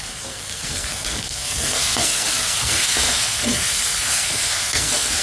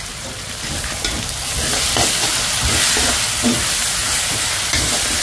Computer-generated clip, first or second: first